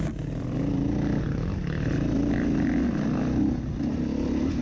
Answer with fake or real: real